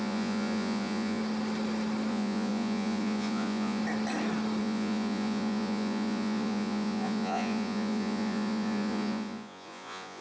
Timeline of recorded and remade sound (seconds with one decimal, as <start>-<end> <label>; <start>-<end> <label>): 0.0-1.2 remade; 1.2-2.1 recorded; 2.1-3.8 remade; 3.8-4.6 recorded; 4.6-10.2 remade